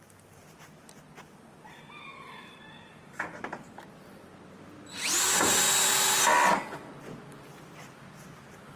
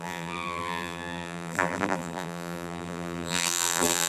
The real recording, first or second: first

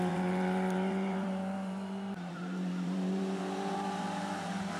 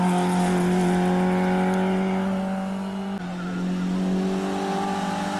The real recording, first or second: second